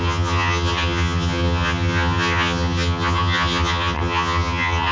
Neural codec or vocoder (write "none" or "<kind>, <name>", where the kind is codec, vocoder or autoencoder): vocoder, HiFi-GAN